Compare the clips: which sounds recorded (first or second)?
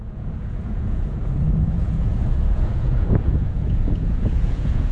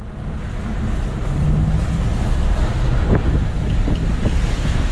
second